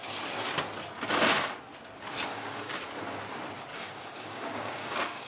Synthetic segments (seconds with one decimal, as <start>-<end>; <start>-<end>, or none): 2.3-2.8; 3.7-5.3